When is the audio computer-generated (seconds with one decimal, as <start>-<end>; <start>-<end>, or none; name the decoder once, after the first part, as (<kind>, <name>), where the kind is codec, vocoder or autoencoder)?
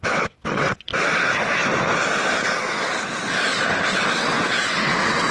0.0-0.9 (vocoder, WaveNeXt); 4.1-5.3